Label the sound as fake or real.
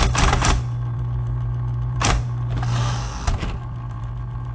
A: fake